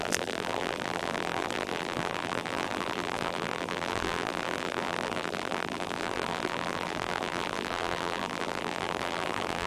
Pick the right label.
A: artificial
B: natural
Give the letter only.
A